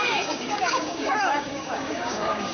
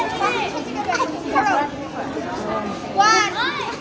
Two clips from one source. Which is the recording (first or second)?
second